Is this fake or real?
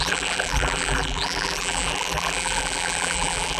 fake